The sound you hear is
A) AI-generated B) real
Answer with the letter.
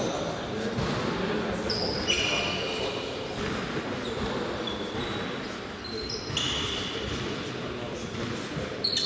A